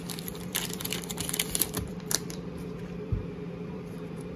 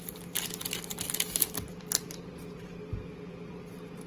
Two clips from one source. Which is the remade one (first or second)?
first